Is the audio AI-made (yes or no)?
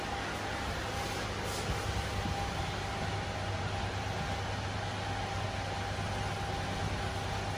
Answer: no